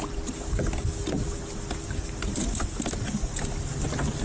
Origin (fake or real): real